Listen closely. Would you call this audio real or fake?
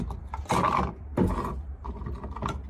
real